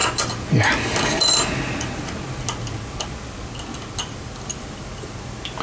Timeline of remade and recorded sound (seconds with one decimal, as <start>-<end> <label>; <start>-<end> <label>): 0.0-5.6 recorded